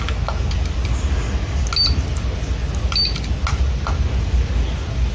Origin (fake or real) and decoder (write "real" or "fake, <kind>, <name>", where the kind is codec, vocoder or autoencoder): real